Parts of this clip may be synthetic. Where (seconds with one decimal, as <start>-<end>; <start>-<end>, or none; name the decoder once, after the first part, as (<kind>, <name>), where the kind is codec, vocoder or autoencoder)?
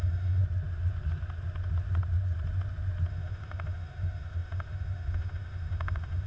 0.0-0.4 (autoencoder, DAC-VAE); 3.1-6.3